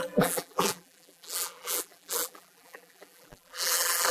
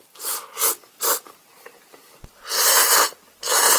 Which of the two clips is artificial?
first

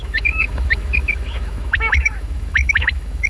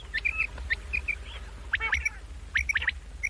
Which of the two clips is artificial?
first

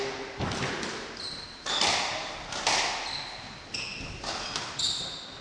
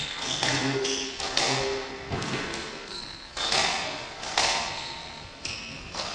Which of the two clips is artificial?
second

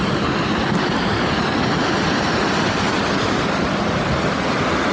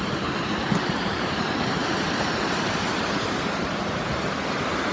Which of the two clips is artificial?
second